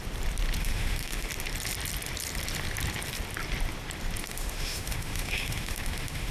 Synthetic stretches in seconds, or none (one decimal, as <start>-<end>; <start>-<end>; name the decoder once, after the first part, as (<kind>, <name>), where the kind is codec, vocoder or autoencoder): 0.6-1.3 (autoencoder, DAC-VAE); 4.2-6.3